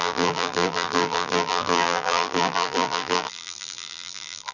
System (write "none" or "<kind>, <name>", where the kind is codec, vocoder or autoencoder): vocoder, BigVGAN v2